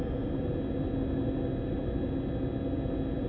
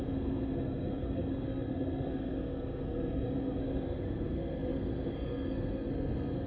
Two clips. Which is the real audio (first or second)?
first